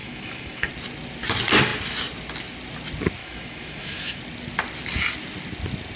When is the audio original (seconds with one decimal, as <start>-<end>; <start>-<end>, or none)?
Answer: 0.7-3.2; 4.2-6.0